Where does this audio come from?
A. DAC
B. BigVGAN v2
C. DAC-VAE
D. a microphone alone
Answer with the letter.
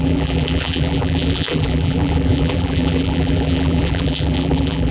B